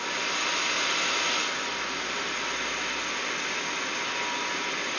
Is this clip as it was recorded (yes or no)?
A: yes